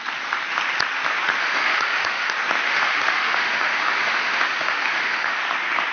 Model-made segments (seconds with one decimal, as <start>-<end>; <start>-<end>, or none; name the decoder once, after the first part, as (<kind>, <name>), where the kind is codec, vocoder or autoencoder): 1.4-2.3 (autoencoder, DAC-VAE); 2.7-5.4